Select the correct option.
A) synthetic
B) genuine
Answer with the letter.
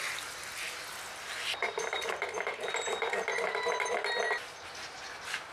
B